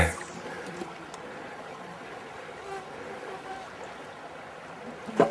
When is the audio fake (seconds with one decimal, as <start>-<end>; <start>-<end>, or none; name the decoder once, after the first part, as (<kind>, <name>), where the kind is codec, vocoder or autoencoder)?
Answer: 1.4-2.4 (vocoder, Vocos)